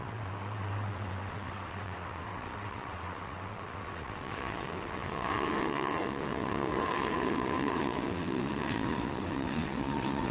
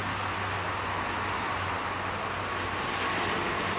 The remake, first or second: first